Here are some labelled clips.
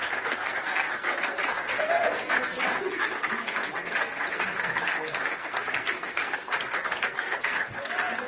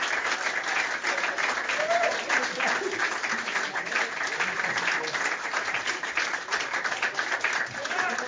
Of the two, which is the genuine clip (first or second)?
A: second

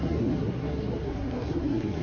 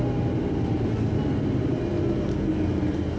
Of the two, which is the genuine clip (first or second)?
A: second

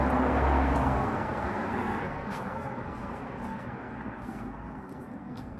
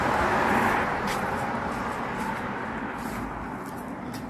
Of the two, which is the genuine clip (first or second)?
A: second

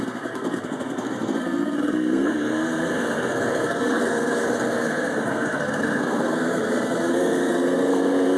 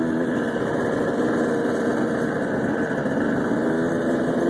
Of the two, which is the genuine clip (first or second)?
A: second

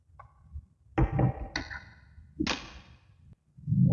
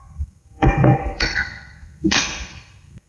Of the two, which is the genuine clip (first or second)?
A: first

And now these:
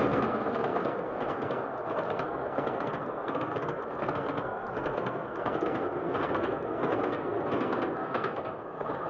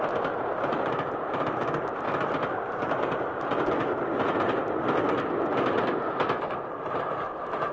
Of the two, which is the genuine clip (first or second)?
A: second